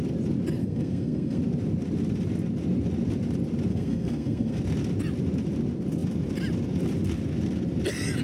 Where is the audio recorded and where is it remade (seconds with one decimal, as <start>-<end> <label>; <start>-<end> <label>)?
0.0-0.6 recorded; 0.6-1.4 remade; 1.4-3.7 recorded; 3.7-4.6 remade; 4.6-8.2 recorded